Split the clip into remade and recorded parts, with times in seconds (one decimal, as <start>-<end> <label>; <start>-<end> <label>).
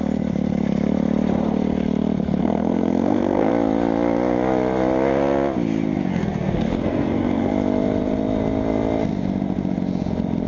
0.0-2.4 recorded; 2.4-3.5 remade; 3.5-6.1 recorded; 6.1-7.5 remade; 7.5-10.5 recorded